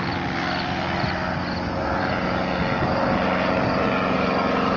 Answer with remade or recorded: recorded